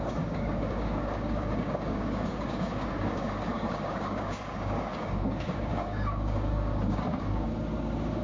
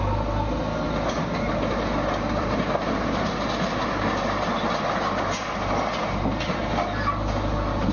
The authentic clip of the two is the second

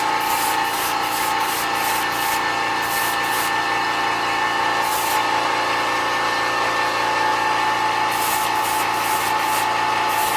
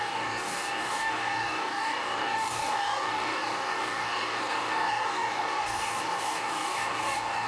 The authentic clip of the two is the first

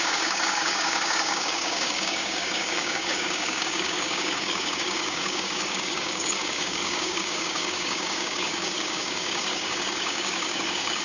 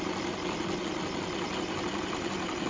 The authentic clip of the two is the second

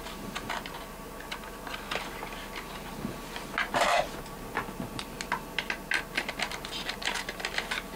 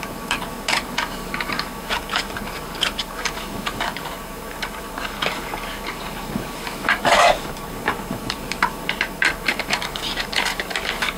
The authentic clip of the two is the first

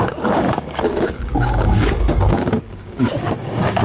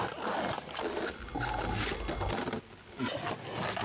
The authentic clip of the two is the second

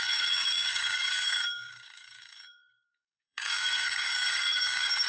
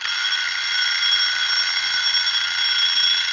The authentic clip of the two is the second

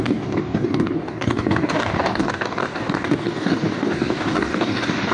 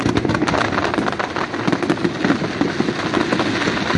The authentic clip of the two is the second